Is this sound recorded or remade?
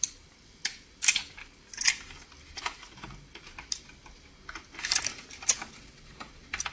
recorded